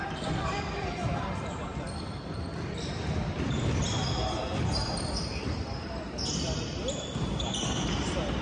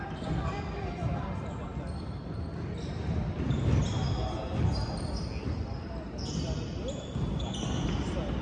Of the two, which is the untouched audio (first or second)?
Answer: second